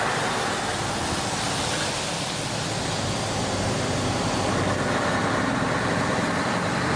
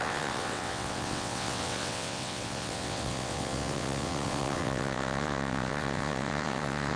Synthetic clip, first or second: second